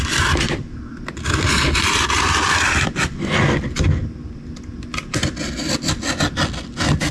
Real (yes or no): yes